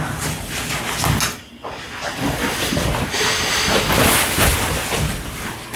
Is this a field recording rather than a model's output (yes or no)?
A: yes